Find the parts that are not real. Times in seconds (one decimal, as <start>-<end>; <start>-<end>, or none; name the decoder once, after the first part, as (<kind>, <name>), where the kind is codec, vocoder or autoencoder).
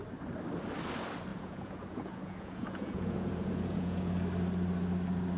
1.3-4.1 (vocoder, Vocos)